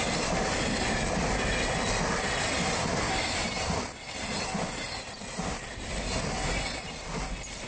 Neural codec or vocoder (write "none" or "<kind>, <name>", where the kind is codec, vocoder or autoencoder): none